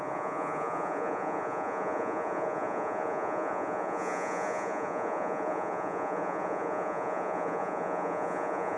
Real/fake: fake